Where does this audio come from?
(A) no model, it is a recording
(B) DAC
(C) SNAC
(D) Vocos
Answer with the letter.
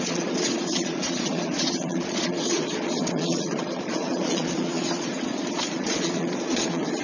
D